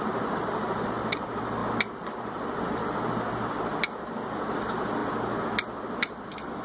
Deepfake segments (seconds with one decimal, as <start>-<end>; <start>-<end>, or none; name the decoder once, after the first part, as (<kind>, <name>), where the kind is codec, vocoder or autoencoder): 0.0-1.6 (vocoder, BigVGAN v2); 3.9-5.0; 6.0-6.6